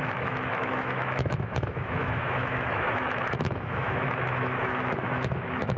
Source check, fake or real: fake